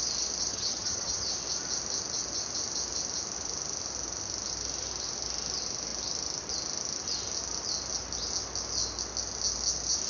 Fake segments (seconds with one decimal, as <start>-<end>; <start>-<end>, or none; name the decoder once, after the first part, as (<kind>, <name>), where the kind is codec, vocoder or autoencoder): 0.5-1.3 (vocoder, HiFi-GAN)